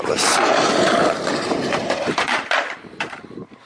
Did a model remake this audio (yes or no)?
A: yes